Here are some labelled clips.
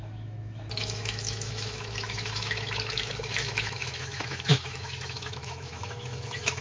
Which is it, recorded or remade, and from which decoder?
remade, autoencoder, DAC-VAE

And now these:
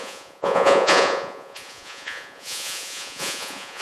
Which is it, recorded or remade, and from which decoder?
remade, vocoder, Vocos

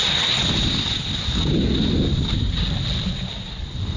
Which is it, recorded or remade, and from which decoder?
recorded